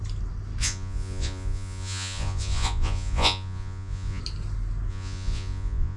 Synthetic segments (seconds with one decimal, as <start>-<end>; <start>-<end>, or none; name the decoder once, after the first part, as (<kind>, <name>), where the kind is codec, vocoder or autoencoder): 0.6-4.2 (vocoder, Vocos); 4.9-6.0

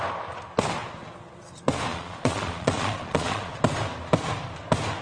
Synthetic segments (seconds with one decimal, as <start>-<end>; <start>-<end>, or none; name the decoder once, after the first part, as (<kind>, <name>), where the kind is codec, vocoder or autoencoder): 1.9-3.5 (vocoder, Vocos)

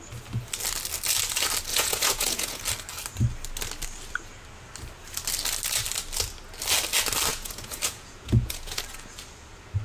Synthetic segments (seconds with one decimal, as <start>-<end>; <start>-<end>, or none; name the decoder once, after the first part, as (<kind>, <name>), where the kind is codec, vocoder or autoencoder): 1.7-2.6 (vocoder, Vocos); 7.3-8.8

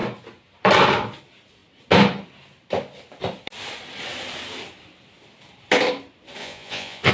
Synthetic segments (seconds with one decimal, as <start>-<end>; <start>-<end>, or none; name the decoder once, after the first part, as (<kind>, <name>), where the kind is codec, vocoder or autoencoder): 6.4-7.1 (vocoder, Vocos)